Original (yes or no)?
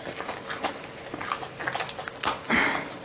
yes